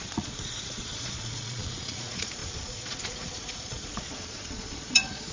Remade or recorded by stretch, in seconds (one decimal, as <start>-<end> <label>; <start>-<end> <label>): 0.0-5.3 remade